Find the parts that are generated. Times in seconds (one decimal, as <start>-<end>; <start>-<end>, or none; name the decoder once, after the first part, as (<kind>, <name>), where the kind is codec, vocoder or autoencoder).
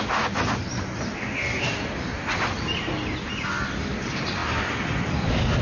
none